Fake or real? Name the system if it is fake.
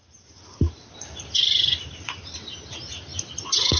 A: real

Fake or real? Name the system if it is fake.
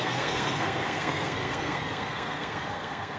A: fake, codec, SNAC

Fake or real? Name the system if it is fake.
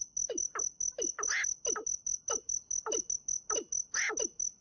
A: real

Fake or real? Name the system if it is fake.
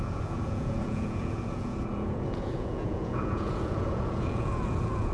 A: fake, vocoder, Vocos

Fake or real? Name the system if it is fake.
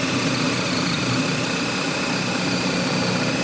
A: real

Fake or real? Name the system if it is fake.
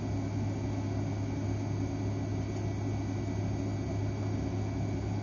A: real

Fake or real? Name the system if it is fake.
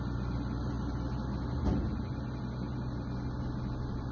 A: real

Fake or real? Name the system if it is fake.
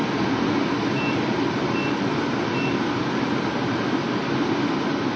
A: real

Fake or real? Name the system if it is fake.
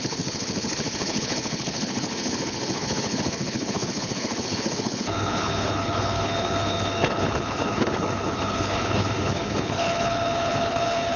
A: fake, codec, HILCodec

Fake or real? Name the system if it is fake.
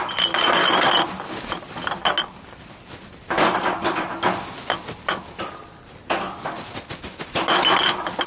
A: real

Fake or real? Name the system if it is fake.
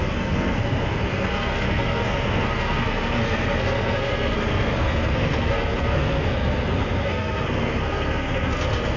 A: fake, codec, SNAC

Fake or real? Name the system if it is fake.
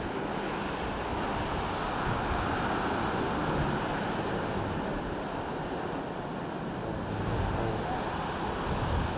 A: real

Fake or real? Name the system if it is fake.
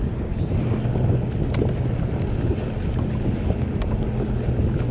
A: real